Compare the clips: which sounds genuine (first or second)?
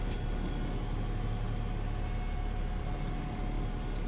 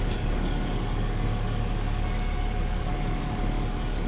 first